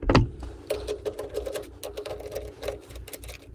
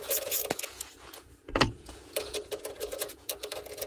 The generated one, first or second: second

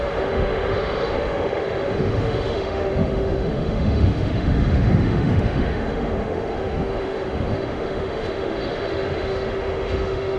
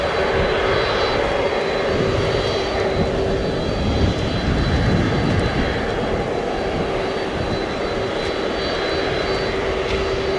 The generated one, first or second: first